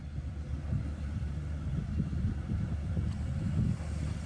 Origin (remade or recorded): recorded